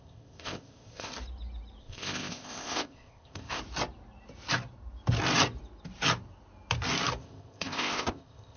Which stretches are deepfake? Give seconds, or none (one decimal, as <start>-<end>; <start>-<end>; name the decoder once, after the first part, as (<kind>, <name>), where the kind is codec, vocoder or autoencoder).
0.0-1.1 (codec, ZipCodec); 1.8-3.6; 7.2-8.6